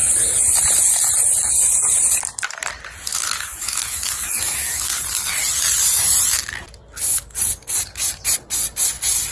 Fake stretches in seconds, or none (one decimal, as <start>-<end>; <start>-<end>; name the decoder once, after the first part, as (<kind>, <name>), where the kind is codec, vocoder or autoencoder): 3.1-5.0 (autoencoder, DAC-VAE)